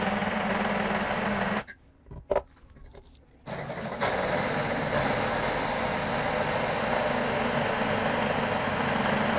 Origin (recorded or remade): recorded